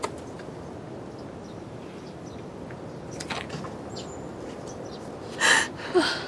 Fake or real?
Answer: real